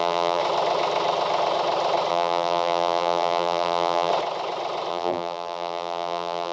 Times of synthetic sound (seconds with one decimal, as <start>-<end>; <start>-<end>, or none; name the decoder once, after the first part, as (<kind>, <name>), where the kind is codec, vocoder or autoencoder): 0.0-0.4 (vocoder, BigVGAN v2); 2.1-4.1; 4.9-6.5